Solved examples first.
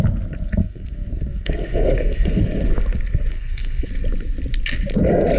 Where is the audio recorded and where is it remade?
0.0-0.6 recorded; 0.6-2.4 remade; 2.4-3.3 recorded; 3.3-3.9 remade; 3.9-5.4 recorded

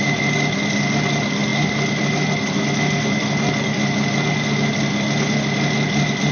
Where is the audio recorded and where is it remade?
0.0-6.3 recorded

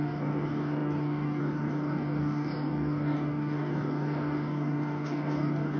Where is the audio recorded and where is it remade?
0.0-5.8 remade